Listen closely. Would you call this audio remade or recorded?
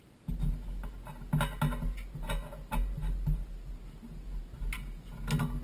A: recorded